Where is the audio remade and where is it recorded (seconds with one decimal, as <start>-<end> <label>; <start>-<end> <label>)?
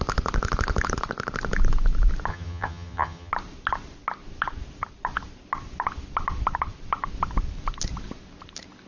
0.0-2.3 recorded; 2.3-3.3 remade; 3.3-8.9 recorded